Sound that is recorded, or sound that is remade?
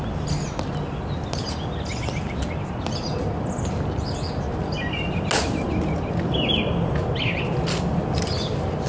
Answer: recorded